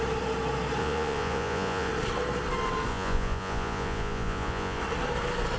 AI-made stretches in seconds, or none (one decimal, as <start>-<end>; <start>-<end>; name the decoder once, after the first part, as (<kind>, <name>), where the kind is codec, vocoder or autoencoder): 0.8-1.9 (vocoder, Vocos); 2.9-4.8